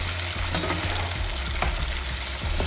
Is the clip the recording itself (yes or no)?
yes